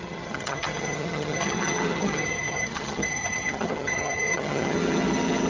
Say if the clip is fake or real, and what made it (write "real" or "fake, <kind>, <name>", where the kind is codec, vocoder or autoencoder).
fake, vocoder, HiFi-GAN